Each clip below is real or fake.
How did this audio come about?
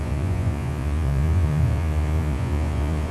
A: fake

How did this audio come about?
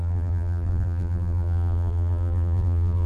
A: fake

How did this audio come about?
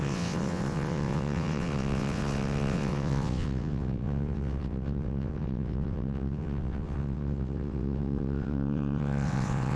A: fake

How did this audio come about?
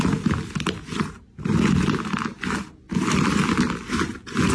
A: real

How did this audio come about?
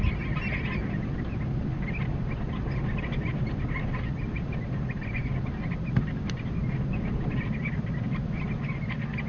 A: real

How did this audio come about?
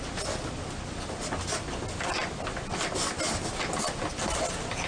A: real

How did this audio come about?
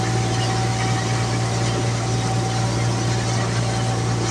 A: real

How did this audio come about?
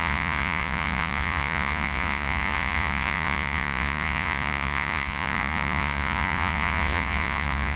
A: fake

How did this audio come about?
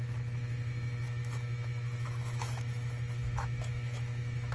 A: fake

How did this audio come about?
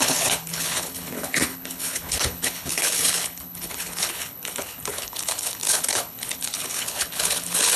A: fake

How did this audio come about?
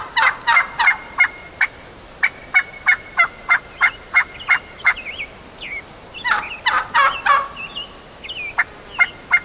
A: real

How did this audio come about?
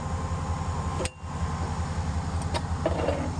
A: real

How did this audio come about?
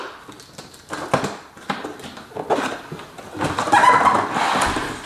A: real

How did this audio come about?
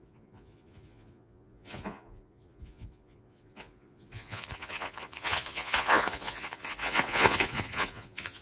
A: fake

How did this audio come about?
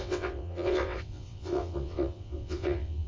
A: fake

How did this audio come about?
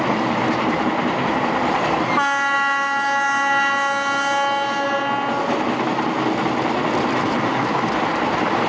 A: real